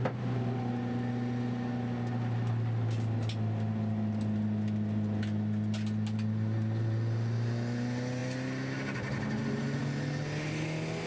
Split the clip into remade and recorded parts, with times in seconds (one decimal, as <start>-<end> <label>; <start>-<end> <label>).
0.0-11.1 recorded